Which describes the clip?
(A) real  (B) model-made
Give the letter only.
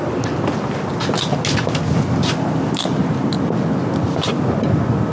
A